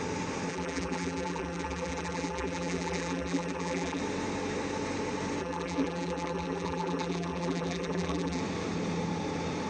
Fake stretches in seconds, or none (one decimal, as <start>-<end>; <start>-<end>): 0.5-4.0; 5.4-8.4